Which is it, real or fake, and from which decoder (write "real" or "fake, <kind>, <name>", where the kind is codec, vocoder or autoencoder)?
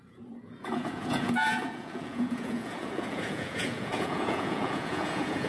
fake, vocoder, Vocos